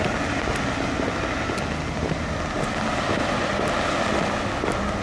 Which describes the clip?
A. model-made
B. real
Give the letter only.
B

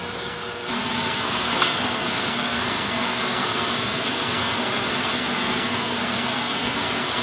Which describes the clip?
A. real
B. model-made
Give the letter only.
B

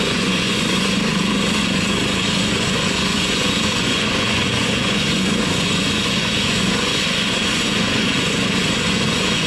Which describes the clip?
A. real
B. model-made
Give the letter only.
B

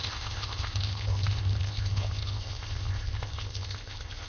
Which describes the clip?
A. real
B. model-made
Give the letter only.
B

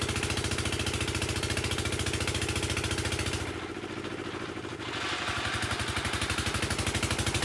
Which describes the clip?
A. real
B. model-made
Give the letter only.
A